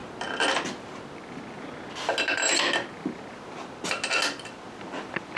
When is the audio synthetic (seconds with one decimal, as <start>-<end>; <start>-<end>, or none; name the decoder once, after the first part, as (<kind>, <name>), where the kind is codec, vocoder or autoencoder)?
none

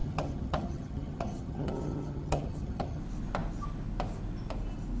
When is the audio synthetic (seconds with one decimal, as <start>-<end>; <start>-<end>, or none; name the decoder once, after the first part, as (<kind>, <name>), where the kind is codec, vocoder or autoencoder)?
0.0-3.0 (vocoder, HiFi-GAN)